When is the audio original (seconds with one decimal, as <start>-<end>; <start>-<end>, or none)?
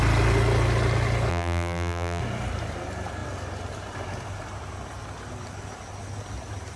0.0-1.3; 2.2-6.8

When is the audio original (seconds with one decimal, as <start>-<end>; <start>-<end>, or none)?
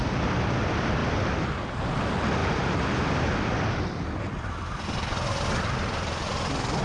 0.0-6.8